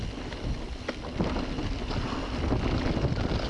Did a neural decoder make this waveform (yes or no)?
no